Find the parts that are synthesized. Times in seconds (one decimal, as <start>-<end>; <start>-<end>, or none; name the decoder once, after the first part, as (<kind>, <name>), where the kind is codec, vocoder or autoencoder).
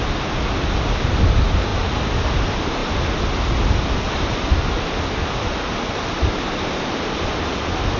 none